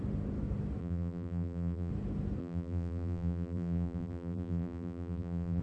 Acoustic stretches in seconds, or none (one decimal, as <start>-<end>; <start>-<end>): 0.0-0.8; 1.9-2.4